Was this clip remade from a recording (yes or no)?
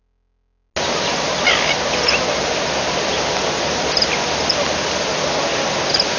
no